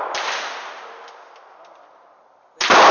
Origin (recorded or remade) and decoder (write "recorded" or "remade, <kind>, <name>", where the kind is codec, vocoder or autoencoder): recorded